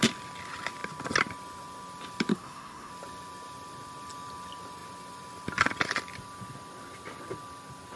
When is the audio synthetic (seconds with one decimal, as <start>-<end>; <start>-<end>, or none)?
2.3-2.9